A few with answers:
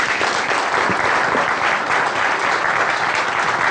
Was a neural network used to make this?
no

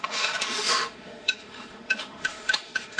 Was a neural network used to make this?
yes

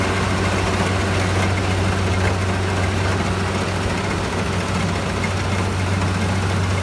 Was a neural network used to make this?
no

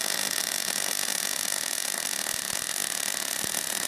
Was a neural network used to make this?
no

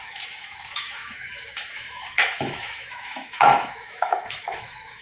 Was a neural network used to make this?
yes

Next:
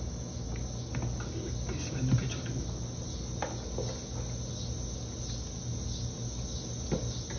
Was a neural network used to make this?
no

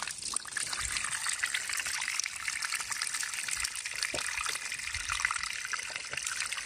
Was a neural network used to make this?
no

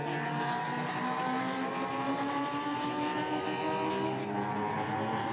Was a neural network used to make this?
no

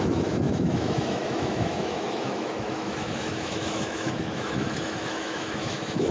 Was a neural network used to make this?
yes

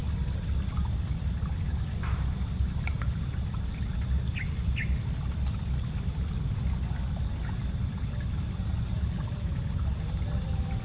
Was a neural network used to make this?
no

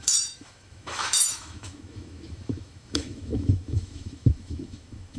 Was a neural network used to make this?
yes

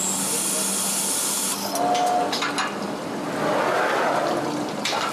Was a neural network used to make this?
no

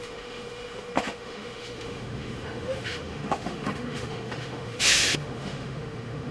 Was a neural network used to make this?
yes